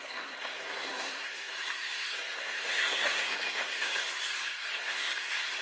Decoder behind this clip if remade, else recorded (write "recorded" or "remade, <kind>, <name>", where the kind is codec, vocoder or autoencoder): remade, codec, SNAC